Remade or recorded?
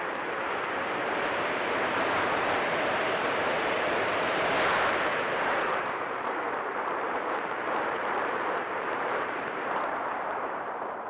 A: remade